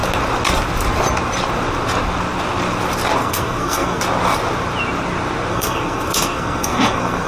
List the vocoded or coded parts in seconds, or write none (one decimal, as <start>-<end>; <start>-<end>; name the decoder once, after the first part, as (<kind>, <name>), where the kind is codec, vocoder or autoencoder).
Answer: 3.2-4.0 (codec, SNAC); 5.5-7.3